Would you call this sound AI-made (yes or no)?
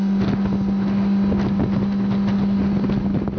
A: no